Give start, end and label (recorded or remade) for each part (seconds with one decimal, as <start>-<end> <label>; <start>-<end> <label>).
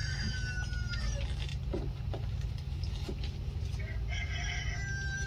0.0-1.5 recorded; 1.5-2.9 remade; 2.9-5.3 recorded